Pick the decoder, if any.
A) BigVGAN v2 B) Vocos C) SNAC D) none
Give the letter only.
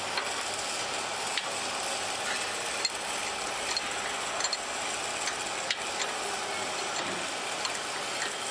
D